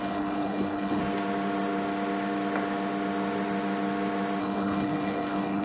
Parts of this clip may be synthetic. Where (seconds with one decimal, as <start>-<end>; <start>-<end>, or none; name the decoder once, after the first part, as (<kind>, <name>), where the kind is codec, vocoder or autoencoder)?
0.0-1.0 (codec, HILCodec); 4.4-5.6